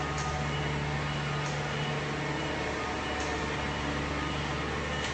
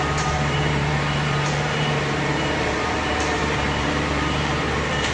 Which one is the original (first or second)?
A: first